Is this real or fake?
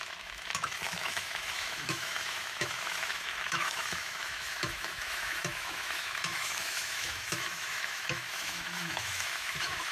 fake